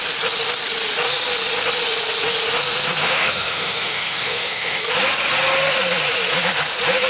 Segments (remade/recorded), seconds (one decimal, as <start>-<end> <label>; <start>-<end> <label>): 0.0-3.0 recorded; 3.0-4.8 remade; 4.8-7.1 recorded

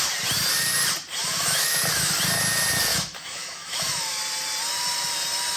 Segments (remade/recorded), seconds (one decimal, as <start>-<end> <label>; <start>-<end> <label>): 0.0-1.2 recorded; 1.2-2.1 remade; 2.1-2.9 recorded; 2.9-4.2 remade; 4.2-5.6 recorded

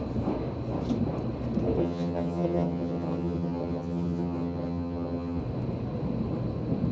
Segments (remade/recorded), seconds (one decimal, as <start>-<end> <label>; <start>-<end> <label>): 0.0-1.8 recorded; 1.8-5.4 remade; 5.4-6.9 recorded